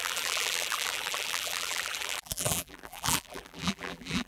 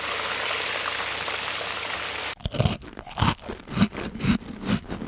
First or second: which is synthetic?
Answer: first